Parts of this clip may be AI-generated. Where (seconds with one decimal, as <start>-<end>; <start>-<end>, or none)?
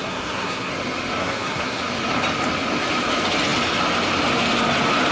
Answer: 0.0-0.7; 1.2-1.8